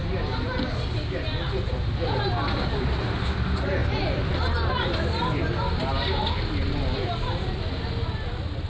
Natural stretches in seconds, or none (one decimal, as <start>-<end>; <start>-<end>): 0.0-8.7